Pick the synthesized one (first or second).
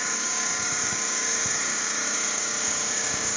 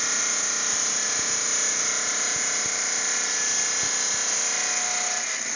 first